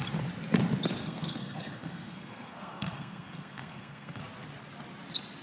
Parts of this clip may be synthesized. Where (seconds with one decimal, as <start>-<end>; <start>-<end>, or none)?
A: 1.0-4.2